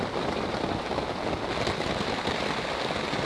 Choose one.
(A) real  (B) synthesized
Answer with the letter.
A